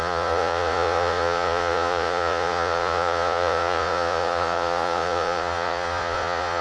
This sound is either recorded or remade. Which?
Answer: remade